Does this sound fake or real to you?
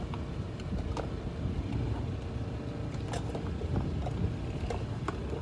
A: real